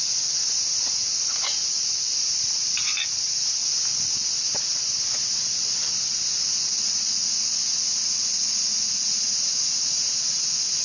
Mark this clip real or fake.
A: real